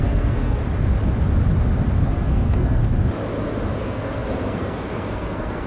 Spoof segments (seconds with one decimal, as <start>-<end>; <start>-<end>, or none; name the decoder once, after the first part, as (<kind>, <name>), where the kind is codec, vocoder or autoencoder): 0.0-0.6 (codec, SNAC); 2.1-2.8; 3.8-5.7